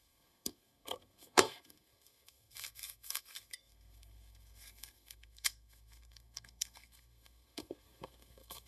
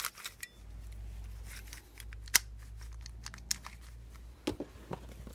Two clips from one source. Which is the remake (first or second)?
first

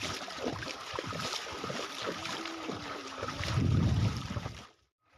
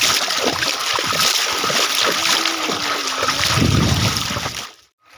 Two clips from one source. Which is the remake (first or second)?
first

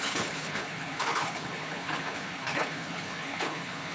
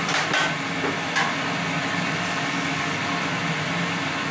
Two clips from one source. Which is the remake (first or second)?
first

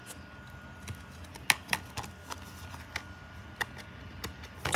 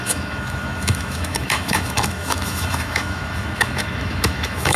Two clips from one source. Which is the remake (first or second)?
second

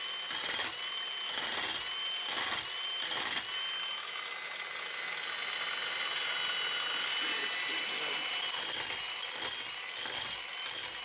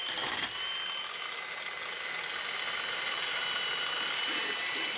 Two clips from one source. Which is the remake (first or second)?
second